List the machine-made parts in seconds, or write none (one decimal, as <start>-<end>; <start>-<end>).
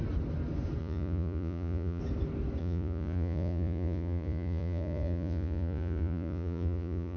0.8-2.0; 2.6-7.2